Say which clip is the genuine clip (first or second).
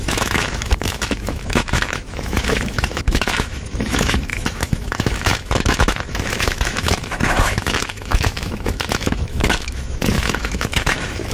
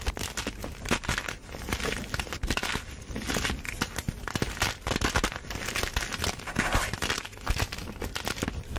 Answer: second